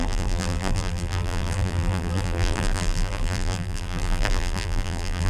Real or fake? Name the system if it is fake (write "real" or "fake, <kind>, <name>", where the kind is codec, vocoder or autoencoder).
fake, vocoder, BigVGAN v2